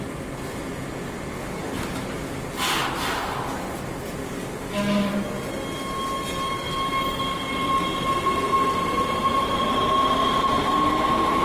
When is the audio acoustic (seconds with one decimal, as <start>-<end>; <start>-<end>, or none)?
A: 0.0-1.4; 2.0-4.2; 5.1-11.4